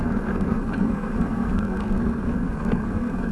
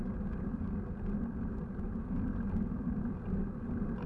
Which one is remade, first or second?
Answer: first